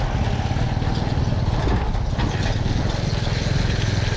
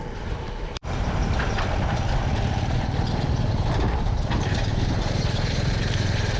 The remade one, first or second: second